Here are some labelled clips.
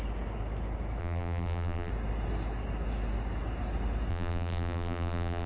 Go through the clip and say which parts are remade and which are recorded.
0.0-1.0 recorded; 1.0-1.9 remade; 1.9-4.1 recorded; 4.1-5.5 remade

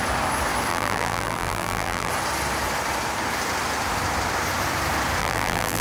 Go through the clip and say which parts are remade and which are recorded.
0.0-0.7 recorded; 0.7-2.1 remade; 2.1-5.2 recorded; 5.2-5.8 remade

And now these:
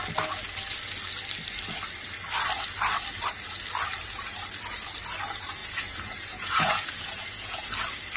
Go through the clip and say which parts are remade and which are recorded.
0.0-5.6 recorded; 5.6-7.7 remade; 7.7-8.2 recorded

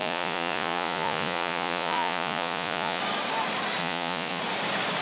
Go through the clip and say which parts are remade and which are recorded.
0.0-3.0 remade; 3.0-3.8 recorded; 3.8-4.4 remade; 4.4-5.0 recorded